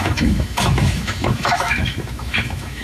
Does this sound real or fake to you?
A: fake